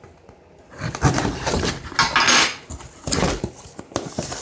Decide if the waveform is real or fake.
real